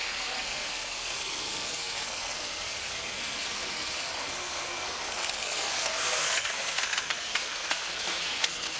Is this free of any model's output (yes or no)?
no